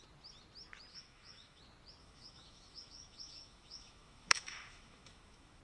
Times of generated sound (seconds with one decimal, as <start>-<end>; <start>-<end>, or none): 0.9-1.6; 2.0-5.6